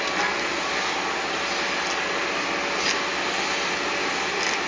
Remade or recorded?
recorded